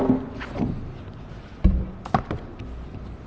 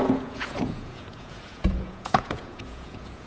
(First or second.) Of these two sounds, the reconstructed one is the second